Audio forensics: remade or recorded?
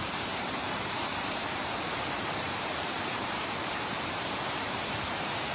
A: remade